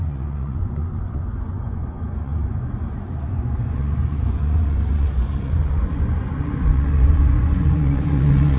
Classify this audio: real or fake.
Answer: fake